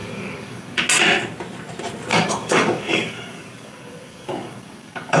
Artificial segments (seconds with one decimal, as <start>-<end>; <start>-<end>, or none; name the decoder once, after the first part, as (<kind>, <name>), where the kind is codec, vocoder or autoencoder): 0.0-0.8 (codec, DAC); 2.1-5.2